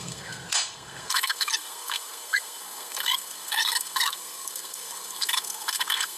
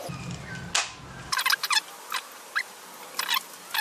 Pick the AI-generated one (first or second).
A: first